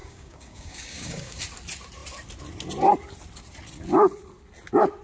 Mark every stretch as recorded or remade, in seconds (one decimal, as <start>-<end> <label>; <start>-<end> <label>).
0.0-1.4 remade; 1.4-5.0 recorded